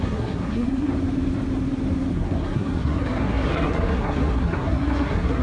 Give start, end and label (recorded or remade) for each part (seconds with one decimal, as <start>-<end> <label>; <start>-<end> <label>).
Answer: 0.0-0.9 remade; 0.9-2.1 recorded; 2.1-5.4 remade